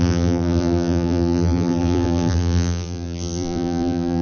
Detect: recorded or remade remade